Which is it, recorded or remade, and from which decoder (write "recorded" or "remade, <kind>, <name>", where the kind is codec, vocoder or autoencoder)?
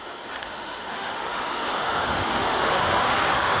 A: remade, autoencoder, DAC-VAE